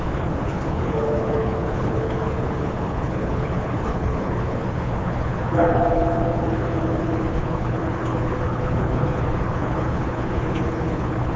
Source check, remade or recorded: remade